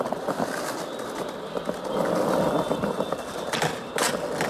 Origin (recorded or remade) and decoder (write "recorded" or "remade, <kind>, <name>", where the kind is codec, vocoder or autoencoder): recorded